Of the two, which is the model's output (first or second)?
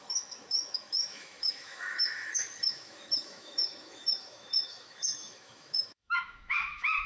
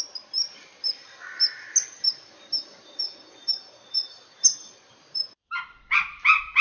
first